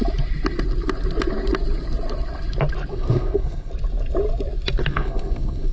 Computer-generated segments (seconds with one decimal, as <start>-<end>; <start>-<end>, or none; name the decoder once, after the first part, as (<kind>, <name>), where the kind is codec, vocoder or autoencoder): 2.9-3.7 (codec, SNAC); 4.9-5.7